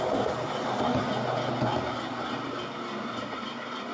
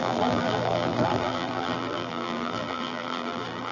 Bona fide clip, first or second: first